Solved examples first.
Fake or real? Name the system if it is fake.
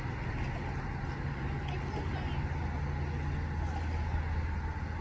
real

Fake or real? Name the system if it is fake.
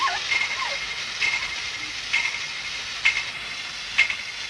real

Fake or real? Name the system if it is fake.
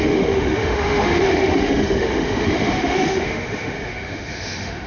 fake, autoencoder, DAC-VAE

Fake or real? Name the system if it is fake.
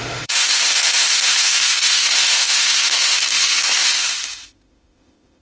fake, autoencoder, DAC-VAE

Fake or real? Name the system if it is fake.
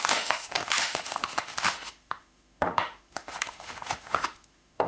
fake, autoencoder, DAC-VAE